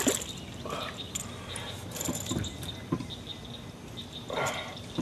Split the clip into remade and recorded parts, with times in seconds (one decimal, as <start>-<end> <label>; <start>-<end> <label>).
0.0-5.0 recorded